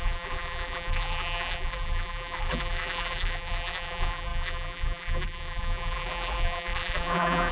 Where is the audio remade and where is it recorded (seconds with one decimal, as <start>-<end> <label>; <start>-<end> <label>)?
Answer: 0.0-7.5 remade

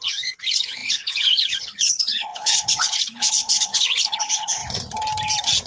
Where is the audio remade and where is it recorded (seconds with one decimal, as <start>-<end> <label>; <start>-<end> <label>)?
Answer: 0.0-4.6 remade; 4.6-5.7 recorded

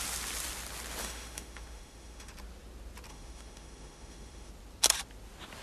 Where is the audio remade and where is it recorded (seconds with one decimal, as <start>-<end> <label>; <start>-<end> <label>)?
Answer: 0.0-1.0 recorded; 1.0-2.3 remade; 2.3-3.1 recorded; 3.1-4.5 remade; 4.5-5.6 recorded